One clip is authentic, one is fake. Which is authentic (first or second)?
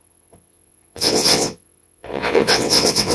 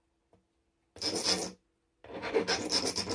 second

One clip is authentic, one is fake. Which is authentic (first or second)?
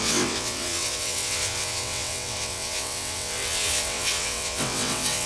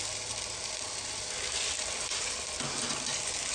second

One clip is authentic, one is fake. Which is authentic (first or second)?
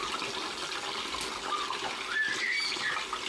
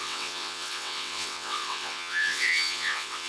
first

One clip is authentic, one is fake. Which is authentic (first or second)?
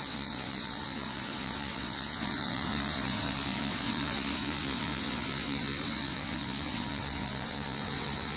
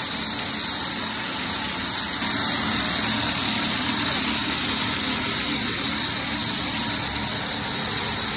second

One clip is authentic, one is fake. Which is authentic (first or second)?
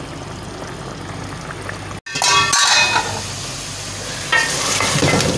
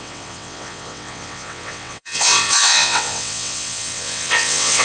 first